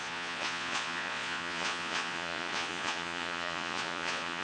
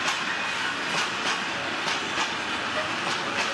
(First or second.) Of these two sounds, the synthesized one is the first